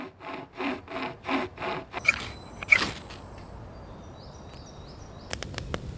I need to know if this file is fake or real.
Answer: real